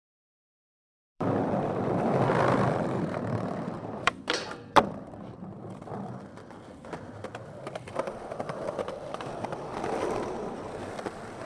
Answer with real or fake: fake